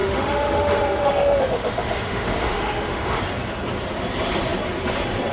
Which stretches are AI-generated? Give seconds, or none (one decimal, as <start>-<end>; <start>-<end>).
0.0-3.2